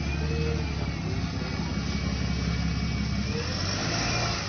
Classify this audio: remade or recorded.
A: recorded